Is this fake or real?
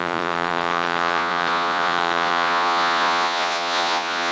fake